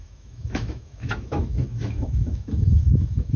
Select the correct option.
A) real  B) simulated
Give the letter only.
B